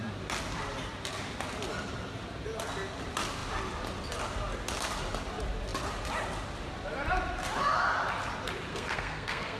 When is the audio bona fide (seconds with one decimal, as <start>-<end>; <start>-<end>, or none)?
0.0-8.7